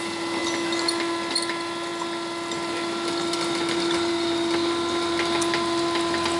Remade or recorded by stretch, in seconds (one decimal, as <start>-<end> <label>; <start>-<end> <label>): 0.0-6.4 recorded